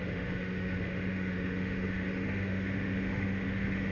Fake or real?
fake